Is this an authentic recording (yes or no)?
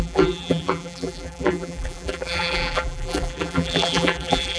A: no